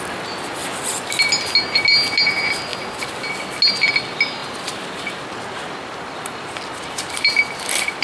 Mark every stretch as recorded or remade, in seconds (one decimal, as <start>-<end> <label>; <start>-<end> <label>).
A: 0.0-8.0 recorded